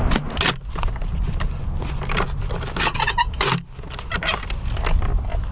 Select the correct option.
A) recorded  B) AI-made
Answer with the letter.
A